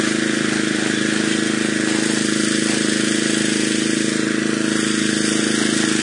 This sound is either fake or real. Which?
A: real